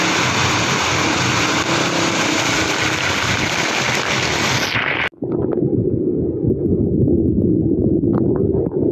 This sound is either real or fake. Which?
real